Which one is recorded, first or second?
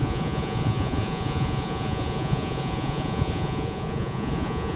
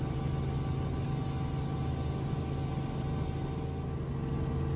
second